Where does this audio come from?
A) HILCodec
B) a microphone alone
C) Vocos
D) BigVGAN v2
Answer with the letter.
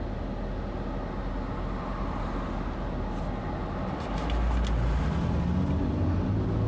B